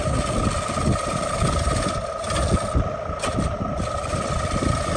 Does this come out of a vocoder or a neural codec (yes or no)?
no